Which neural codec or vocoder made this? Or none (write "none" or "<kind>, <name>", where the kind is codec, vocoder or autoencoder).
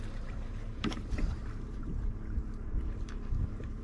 vocoder, BigVGAN v2